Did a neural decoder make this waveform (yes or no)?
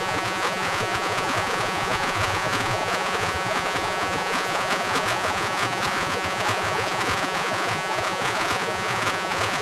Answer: yes